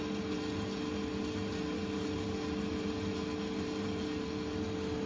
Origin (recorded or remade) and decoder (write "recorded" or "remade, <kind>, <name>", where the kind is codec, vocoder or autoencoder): recorded